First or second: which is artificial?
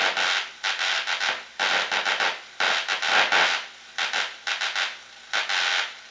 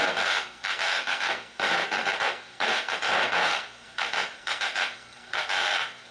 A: second